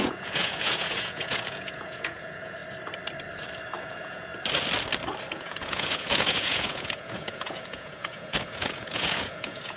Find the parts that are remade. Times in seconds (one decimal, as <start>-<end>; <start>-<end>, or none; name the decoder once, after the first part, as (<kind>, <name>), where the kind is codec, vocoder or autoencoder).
0.0-2.6 (vocoder, Vocos); 3.8-4.3; 5.3-9.8